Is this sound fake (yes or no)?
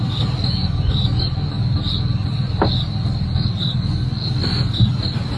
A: no